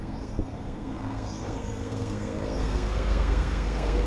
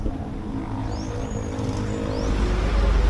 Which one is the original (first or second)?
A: second